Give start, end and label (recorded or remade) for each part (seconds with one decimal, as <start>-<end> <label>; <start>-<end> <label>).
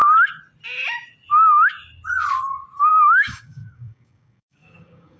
0.0-2.9 recorded; 2.9-5.2 remade